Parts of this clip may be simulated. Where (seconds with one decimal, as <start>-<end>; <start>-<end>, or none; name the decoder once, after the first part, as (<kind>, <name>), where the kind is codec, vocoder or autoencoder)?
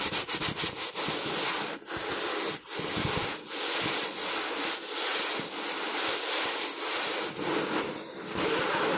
none